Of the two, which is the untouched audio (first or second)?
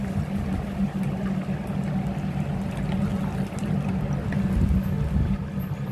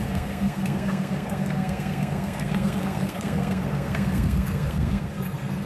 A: first